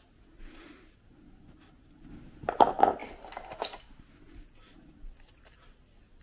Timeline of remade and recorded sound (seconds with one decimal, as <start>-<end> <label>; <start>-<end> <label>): 0.0-6.2 recorded